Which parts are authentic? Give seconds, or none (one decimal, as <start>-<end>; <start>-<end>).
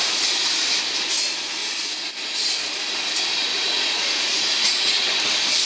0.0-1.6; 2.1-3.5; 5.1-5.6